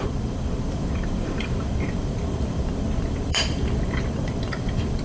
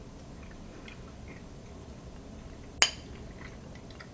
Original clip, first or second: second